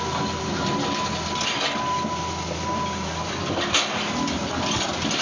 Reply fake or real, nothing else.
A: real